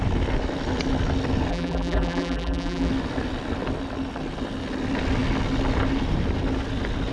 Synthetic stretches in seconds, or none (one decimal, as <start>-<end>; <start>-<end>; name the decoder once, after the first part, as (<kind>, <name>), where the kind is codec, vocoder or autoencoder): 1.5-2.9 (vocoder, BigVGAN v2)